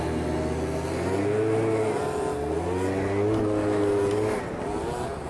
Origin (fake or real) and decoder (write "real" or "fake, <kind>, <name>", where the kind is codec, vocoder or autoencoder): real